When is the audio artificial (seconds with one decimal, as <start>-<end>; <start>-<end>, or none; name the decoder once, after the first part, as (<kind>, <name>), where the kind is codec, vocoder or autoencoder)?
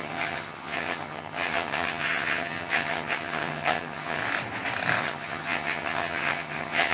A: 0.0-4.2 (vocoder, HiFi-GAN); 5.0-6.9